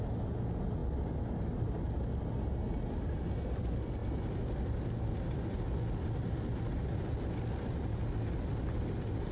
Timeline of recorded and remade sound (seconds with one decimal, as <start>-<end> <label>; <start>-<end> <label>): 0.0-4.0 recorded; 4.0-5.1 remade; 5.1-9.3 recorded